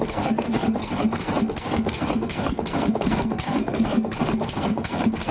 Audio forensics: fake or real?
fake